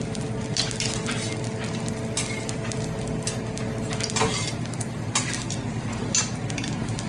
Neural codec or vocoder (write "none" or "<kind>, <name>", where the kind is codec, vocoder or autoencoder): none